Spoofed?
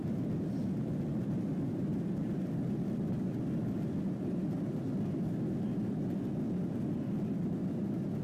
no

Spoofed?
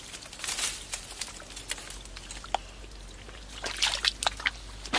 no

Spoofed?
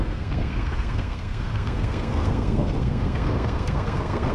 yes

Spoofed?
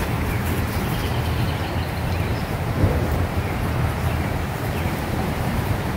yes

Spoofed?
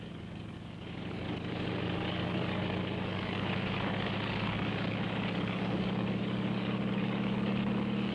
yes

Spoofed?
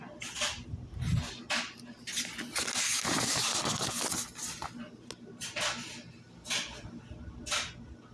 no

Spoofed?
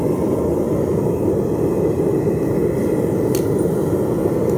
no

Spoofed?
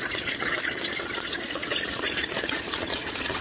yes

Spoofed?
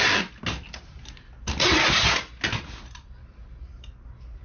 no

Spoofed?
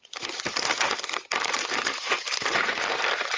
yes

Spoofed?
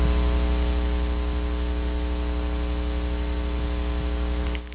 no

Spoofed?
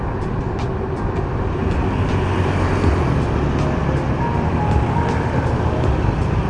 no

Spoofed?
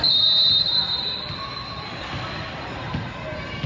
yes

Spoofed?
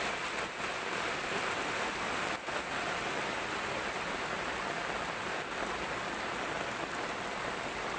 no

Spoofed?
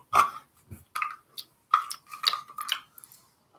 no